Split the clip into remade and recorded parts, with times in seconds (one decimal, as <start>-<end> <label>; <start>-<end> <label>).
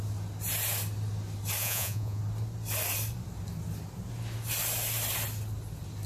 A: 0.0-1.6 recorded; 1.6-2.2 remade; 2.2-6.1 recorded